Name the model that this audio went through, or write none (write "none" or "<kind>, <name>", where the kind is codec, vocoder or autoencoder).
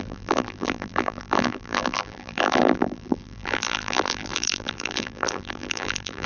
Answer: vocoder, BigVGAN v2